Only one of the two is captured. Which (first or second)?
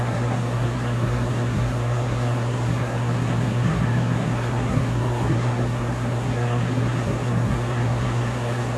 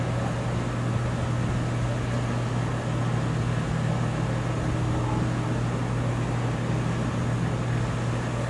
second